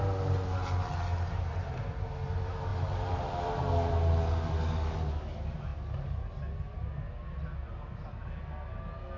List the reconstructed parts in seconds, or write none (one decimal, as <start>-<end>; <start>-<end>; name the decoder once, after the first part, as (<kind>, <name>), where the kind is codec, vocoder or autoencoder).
1.1-2.1 (vocoder, BigVGAN v2); 2.7-3.7